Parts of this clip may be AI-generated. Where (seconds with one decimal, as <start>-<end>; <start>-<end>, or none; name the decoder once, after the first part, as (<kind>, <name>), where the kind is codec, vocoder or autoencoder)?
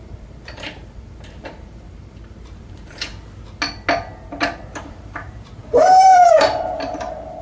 0.0-3.1 (vocoder, BigVGAN v2); 4.8-7.4